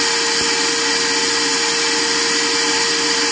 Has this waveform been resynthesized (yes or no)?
no